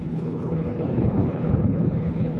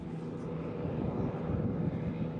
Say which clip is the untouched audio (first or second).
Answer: second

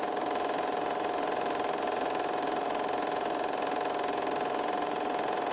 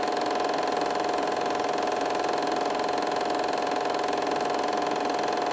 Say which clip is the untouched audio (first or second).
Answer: second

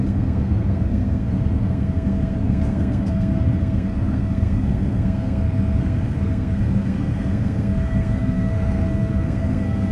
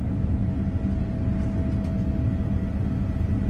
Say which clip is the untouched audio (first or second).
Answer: second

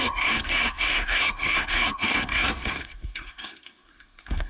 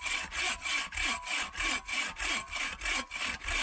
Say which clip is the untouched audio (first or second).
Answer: second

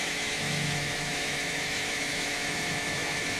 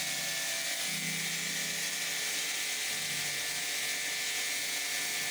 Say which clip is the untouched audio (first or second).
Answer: second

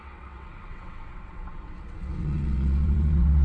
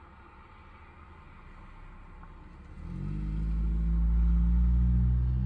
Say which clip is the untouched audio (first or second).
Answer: second